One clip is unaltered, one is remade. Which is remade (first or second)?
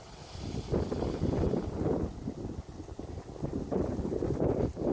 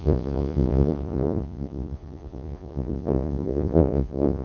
second